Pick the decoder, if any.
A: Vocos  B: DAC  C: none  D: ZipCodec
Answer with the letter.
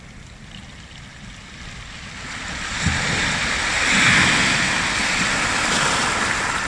C